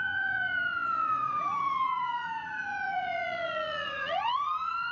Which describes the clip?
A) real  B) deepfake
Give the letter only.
B